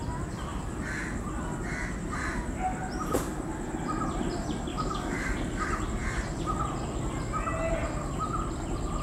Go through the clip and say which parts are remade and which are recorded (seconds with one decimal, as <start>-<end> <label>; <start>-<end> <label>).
0.0-4.7 recorded; 4.7-5.6 remade; 5.6-9.0 recorded